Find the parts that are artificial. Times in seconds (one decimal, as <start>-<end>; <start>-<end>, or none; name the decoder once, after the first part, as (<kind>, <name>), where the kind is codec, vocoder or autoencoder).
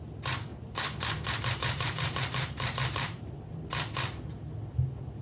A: 0.5-3.6 (vocoder, BigVGAN v2)